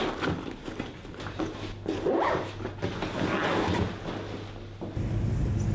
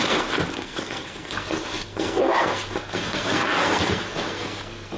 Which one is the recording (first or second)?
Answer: first